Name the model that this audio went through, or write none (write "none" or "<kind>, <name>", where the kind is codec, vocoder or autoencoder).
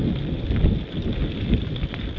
none